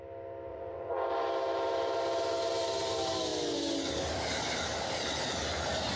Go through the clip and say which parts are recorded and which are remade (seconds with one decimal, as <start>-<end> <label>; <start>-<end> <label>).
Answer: 0.0-0.5 recorded; 0.5-1.1 remade; 1.1-6.0 recorded